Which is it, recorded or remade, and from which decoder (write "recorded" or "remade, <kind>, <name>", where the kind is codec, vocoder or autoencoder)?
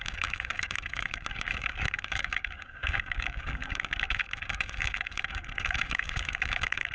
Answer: remade, codec, DAC